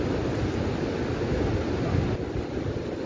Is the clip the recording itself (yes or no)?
yes